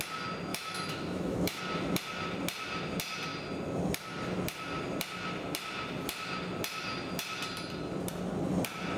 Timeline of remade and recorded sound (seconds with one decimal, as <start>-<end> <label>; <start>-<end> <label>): 0.0-0.5 recorded; 0.5-1.6 remade; 1.6-9.0 recorded